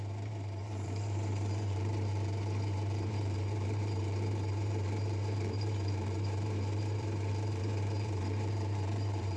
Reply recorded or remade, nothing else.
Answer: remade